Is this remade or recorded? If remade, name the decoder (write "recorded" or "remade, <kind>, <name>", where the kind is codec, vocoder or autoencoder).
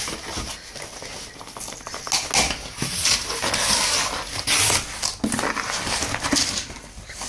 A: recorded